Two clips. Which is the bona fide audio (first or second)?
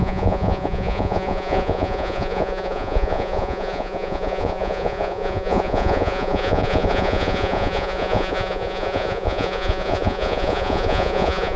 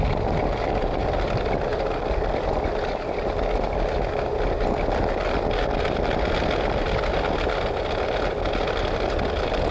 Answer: second